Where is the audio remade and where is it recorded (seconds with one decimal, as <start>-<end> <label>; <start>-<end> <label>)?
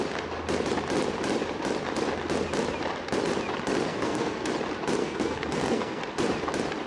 0.0-3.9 recorded; 3.9-4.5 remade; 4.5-5.0 recorded; 5.0-6.0 remade; 6.0-6.9 recorded